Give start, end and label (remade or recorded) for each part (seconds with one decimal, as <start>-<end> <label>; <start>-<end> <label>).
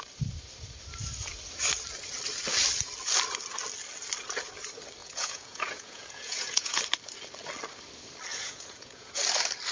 0.0-5.0 recorded; 5.0-6.8 remade; 6.8-8.3 recorded; 8.3-9.2 remade; 9.2-9.7 recorded